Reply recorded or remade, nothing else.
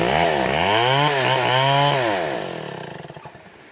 recorded